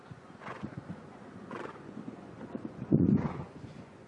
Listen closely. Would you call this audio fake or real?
fake